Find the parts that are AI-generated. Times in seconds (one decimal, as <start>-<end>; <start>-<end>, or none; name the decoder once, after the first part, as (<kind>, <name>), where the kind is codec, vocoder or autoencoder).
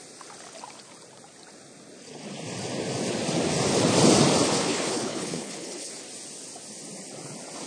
4.6-5.9 (codec, HILCodec)